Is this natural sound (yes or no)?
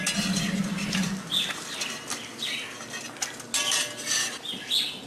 yes